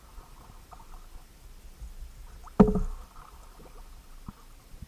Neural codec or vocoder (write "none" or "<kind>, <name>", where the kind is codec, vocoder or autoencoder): none